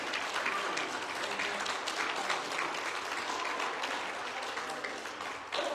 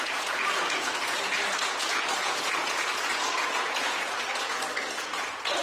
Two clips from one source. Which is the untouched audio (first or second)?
first